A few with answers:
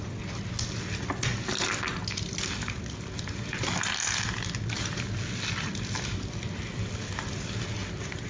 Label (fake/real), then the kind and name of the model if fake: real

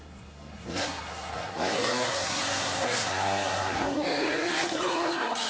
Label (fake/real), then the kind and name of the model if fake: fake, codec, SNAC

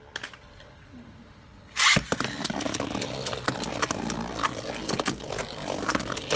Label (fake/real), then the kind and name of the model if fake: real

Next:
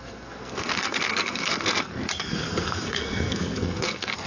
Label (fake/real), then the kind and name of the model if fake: fake, codec, SNAC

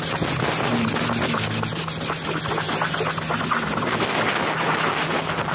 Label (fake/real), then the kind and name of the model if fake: real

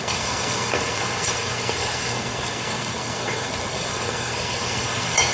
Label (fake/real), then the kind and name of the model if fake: fake, codec, SNAC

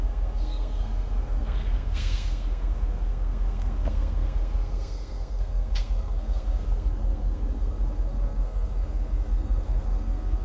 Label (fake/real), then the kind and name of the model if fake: fake, codec, SNAC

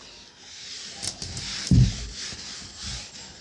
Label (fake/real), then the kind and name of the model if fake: real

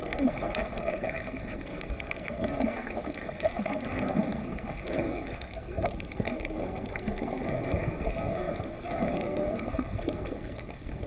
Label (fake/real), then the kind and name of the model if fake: fake, codec, SNAC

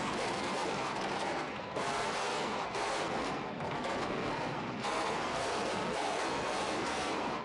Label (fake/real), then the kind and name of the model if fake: fake, codec, SNAC